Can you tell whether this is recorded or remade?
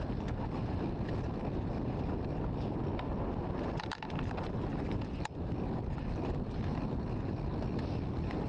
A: recorded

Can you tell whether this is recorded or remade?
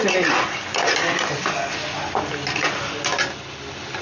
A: recorded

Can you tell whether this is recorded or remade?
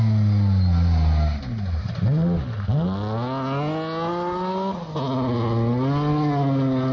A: recorded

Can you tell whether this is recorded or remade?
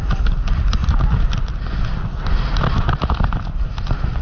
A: recorded